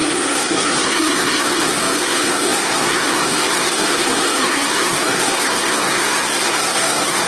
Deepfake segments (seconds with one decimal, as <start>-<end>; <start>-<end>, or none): 0.0-7.3